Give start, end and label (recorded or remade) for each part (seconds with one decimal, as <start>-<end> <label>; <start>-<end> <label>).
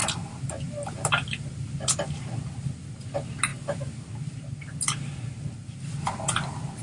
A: 0.0-6.8 recorded